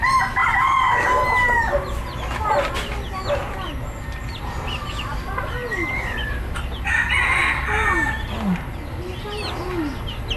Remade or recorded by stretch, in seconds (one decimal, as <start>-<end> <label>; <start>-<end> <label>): 0.0-10.4 recorded